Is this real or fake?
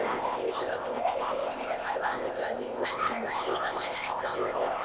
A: fake